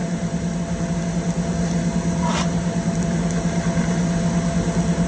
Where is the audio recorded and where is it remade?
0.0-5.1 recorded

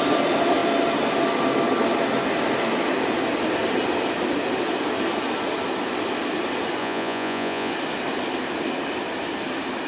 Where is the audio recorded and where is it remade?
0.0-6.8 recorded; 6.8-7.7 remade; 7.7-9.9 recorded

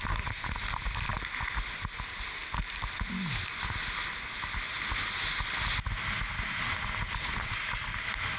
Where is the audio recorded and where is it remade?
0.0-8.4 recorded

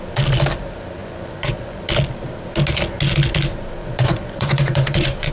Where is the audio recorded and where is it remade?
0.0-1.0 recorded; 1.0-1.8 remade; 1.8-3.8 recorded; 3.8-5.3 remade